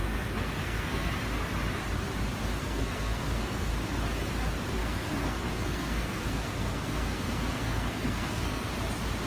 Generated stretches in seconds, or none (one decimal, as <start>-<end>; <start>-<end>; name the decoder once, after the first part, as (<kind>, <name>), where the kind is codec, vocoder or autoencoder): 0.0-1.1 (codec, SNAC); 2.6-3.7; 4.8-8.7